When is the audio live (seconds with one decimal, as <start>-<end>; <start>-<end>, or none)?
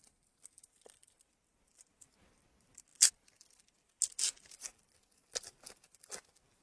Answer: 0.0-6.6